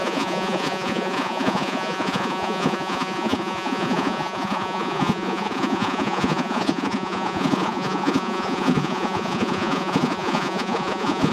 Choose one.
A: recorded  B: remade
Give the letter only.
B